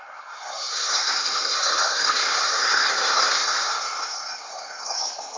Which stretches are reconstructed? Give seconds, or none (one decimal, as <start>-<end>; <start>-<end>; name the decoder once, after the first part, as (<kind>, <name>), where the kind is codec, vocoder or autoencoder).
0.0-5.4 (codec, SNAC)